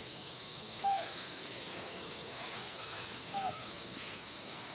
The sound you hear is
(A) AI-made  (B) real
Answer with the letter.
A